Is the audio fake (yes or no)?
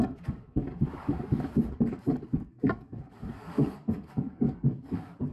yes